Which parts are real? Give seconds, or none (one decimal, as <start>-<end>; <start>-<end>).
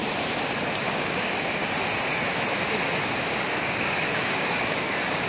0.0-0.8; 1.6-3.3